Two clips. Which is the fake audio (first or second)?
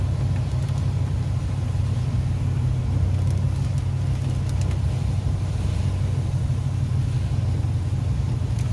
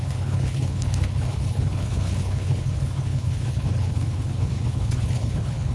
second